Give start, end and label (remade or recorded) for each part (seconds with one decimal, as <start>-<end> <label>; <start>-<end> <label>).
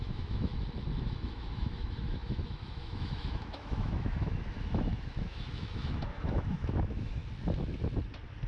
0.0-0.5 remade; 0.5-1.0 recorded; 1.0-7.2 remade; 7.2-8.5 recorded